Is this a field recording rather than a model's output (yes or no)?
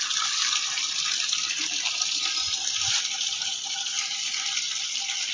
yes